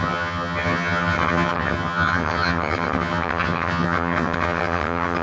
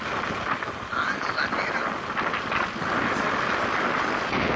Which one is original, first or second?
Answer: second